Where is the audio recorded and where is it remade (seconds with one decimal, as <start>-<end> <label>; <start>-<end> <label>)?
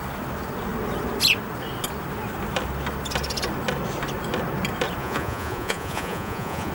0.0-5.0 recorded; 5.0-6.7 remade